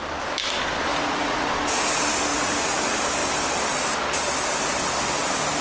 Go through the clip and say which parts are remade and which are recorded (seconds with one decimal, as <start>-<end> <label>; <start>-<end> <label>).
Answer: 0.0-0.9 recorded; 0.9-1.5 remade; 1.5-2.3 recorded; 2.3-2.8 remade; 2.8-5.6 recorded